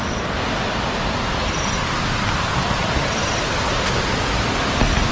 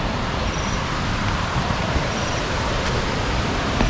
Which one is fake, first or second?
second